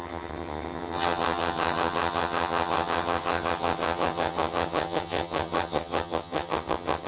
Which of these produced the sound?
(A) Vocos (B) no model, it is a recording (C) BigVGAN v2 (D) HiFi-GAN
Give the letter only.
D